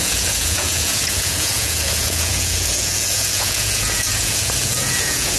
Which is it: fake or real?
fake